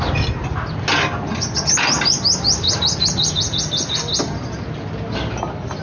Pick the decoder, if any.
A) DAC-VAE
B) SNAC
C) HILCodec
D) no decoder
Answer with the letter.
D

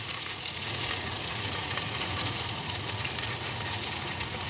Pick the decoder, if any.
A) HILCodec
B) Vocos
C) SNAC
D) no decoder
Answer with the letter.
B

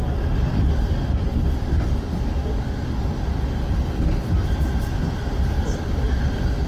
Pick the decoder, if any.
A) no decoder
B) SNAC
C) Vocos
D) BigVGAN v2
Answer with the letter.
A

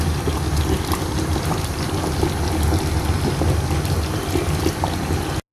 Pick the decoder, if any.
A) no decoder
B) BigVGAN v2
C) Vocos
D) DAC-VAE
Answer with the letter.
A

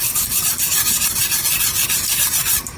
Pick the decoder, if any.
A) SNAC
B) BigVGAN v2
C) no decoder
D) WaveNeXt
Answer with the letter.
C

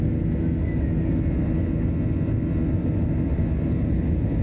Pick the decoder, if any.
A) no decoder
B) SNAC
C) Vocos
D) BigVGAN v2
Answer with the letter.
A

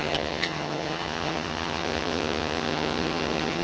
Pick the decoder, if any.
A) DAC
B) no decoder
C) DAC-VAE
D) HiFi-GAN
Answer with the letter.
D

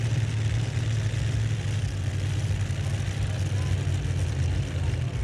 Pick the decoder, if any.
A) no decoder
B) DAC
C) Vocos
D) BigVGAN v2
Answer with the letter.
A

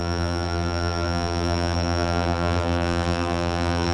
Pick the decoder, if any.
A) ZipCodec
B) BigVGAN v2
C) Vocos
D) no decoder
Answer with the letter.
B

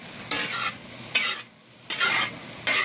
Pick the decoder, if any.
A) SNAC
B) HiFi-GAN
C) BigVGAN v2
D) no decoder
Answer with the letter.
D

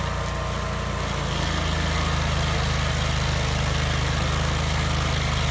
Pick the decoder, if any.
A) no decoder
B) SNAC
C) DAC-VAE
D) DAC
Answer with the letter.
A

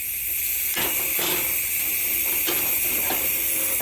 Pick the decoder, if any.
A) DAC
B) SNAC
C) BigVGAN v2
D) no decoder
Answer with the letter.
D